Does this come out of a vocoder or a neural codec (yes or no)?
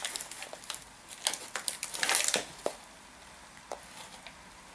no